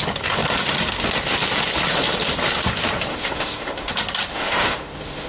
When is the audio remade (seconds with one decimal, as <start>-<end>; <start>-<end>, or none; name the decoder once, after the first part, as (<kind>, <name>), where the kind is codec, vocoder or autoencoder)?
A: 3.1-3.9 (autoencoder, DAC-VAE); 4.3-5.3